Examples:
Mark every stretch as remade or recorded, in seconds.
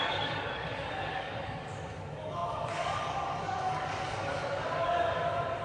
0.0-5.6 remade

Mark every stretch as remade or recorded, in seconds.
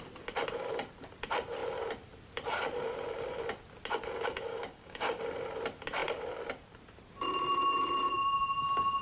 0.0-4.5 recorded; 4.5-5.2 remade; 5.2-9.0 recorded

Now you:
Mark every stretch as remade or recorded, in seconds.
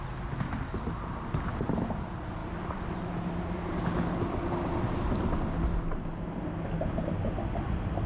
0.0-8.1 recorded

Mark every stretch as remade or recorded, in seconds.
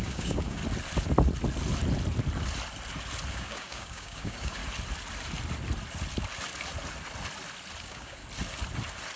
0.0-0.6 remade; 0.6-3.3 recorded; 3.3-4.6 remade; 4.6-7.8 recorded; 7.8-8.2 remade; 8.2-9.2 recorded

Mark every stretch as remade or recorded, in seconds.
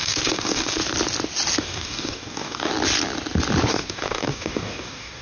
0.0-0.8 remade; 0.8-1.6 recorded; 1.6-2.7 remade; 2.7-3.7 recorded; 3.7-5.2 remade